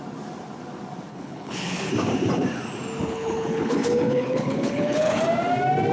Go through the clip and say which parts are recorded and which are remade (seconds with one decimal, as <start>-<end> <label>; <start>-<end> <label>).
0.0-1.1 recorded; 1.1-1.9 remade; 1.9-3.0 recorded; 3.0-5.2 remade; 5.2-5.9 recorded